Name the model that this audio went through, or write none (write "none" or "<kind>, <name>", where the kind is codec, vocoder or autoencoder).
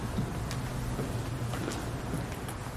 none